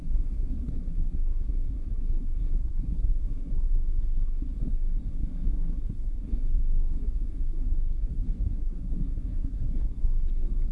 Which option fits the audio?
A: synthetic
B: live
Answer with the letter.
A